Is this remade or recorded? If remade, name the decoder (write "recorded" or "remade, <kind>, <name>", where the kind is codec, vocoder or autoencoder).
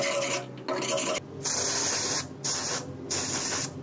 recorded